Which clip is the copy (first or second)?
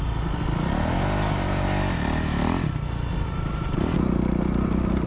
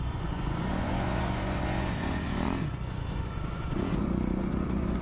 second